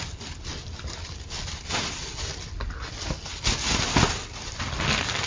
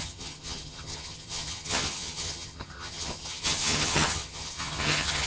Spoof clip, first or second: second